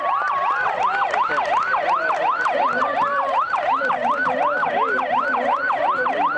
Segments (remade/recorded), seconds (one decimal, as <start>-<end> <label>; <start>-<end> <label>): 0.0-6.4 recorded